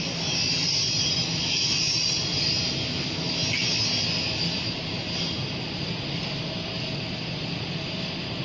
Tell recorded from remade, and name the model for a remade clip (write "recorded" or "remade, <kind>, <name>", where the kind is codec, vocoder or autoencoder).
recorded